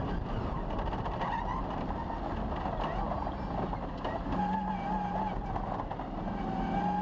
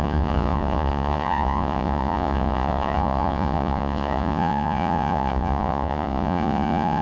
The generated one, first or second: second